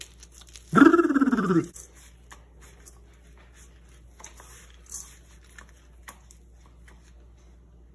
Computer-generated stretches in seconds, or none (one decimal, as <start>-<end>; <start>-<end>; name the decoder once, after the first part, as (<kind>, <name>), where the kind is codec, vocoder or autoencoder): 0.9-1.7 (vocoder, BigVGAN v2)

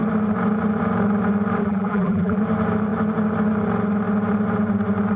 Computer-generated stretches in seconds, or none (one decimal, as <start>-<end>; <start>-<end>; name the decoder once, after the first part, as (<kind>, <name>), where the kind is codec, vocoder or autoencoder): 1.6-2.4 (vocoder, BigVGAN v2)